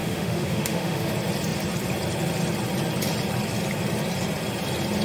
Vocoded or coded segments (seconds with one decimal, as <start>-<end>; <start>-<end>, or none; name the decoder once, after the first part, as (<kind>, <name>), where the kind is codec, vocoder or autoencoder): 0.0-1.1 (autoencoder, DAC-VAE)